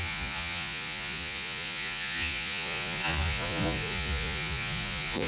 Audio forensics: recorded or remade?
remade